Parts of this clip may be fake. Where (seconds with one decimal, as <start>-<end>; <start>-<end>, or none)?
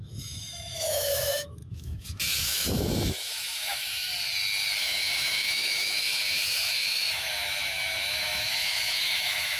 0.0-4.1; 4.8-9.6